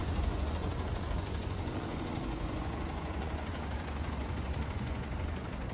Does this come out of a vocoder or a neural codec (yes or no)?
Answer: yes